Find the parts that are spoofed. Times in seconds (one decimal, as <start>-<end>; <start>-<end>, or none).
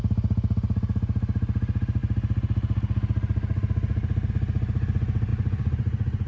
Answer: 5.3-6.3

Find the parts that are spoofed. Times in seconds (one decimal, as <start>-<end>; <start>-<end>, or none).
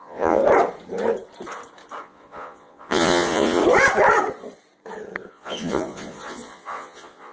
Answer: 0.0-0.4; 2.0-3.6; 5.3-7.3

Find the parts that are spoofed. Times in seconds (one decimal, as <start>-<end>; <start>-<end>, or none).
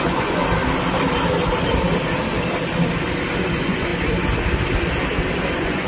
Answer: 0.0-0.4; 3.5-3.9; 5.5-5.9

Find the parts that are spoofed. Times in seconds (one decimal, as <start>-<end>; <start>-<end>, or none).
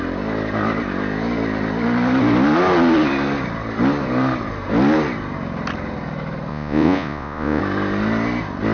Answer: 6.5-7.6